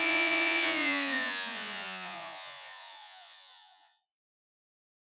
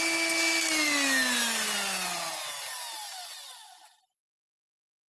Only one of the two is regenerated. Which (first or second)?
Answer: first